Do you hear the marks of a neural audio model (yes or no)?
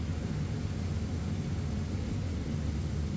no